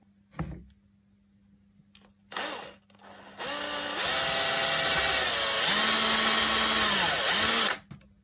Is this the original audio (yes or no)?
yes